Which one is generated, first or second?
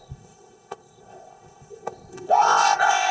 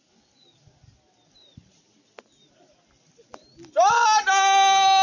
first